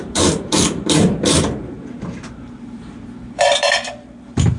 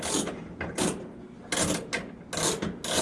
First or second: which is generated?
first